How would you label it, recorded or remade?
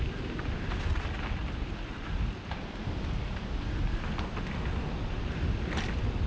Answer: recorded